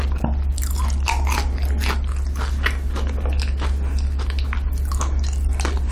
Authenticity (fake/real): real